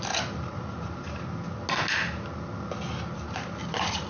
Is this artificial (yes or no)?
no